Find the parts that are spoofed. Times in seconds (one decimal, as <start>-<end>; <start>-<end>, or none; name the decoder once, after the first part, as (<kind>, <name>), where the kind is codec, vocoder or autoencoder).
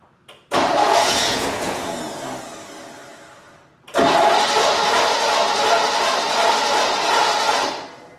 0.8-2.2 (vocoder, Vocos)